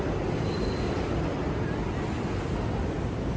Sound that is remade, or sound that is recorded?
recorded